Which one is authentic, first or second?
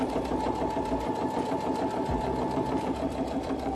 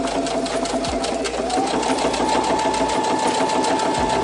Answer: second